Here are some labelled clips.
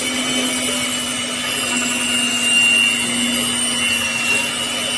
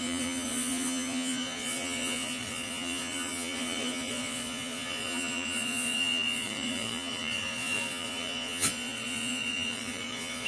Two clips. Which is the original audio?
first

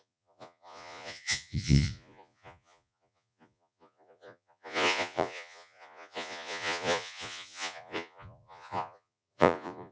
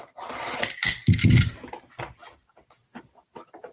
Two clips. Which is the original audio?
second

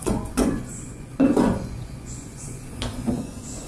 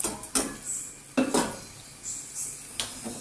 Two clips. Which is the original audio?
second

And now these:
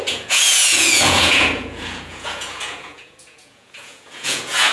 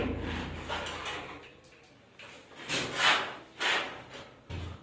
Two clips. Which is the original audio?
second